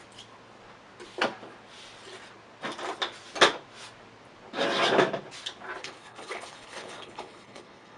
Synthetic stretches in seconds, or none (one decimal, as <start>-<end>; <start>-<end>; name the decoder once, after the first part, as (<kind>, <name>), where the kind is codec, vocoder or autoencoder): 5.8-8.0 (codec, HILCodec)